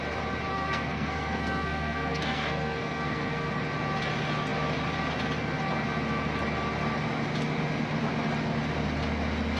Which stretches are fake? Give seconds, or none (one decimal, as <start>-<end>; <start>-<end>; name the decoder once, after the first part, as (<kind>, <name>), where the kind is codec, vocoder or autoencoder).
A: 0.5-3.5 (codec, SNAC)